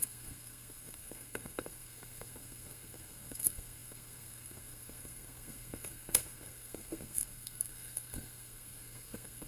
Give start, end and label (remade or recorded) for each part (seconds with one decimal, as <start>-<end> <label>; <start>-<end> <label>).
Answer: 0.0-9.5 remade